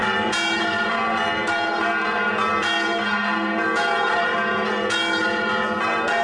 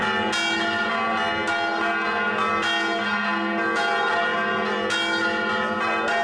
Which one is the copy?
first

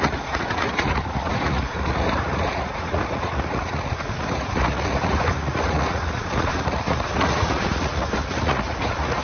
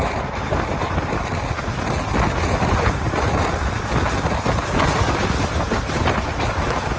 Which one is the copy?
first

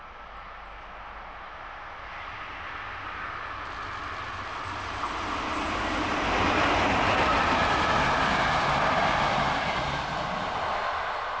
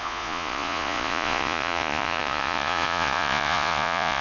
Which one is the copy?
second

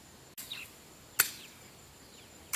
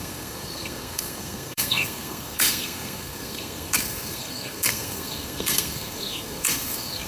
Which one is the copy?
second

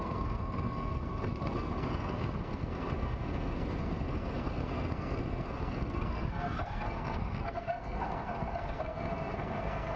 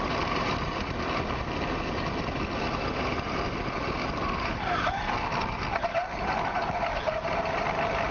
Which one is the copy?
first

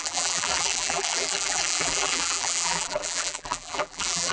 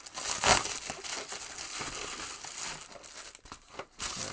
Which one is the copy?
first